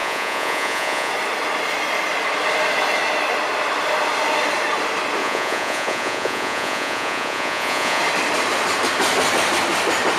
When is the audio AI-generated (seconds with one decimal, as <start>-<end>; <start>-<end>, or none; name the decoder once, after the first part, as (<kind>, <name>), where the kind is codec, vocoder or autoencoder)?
0.0-1.1 (vocoder, Vocos); 5.2-8.0